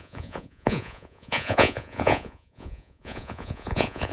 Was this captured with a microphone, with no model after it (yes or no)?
no